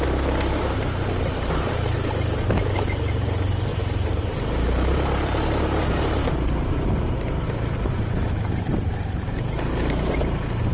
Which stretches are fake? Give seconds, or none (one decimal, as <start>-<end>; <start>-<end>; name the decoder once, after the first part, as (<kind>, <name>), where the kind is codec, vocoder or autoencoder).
0.0-10.7 (vocoder, BigVGAN v2)